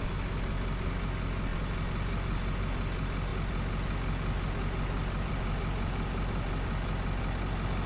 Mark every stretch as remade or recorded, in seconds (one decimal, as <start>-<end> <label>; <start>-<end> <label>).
0.0-7.9 recorded

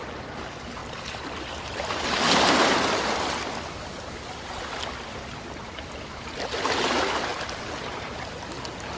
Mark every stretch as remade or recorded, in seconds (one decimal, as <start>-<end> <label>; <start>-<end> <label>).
0.0-9.0 recorded

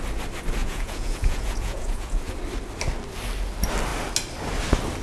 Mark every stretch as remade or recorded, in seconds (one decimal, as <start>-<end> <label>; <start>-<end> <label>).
0.0-0.6 recorded; 0.6-2.3 remade; 2.3-5.0 recorded

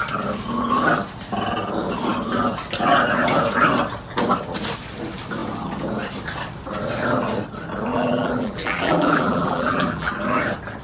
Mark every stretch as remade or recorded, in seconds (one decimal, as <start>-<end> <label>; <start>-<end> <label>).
0.0-7.9 recorded; 7.9-10.1 remade; 10.1-10.8 recorded

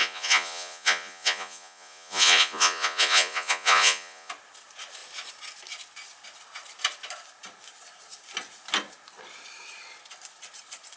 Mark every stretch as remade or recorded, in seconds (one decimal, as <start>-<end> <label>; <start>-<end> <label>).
0.0-4.3 remade; 4.3-11.0 recorded

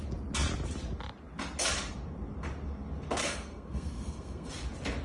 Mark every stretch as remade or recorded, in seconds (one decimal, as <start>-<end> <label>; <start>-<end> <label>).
0.0-3.2 recorded; 3.2-4.5 remade; 4.5-5.0 recorded

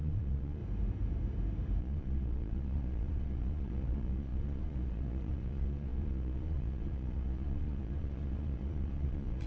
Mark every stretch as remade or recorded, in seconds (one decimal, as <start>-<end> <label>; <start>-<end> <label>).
0.0-0.6 remade; 0.6-1.8 recorded; 1.8-9.5 remade